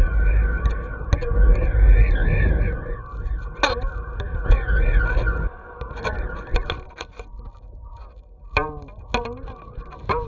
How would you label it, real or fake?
real